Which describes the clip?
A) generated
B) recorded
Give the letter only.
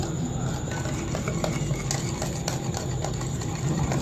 B